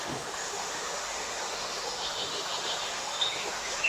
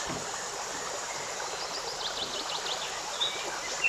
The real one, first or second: second